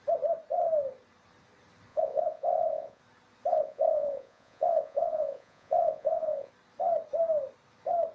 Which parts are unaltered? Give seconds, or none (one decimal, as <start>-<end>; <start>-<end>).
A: 0.0-1.9; 3.0-3.5; 6.5-8.1